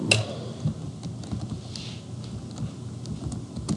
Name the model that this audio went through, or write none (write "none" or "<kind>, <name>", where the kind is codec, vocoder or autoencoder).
none